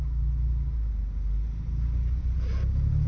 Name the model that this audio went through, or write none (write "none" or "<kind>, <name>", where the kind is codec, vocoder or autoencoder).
none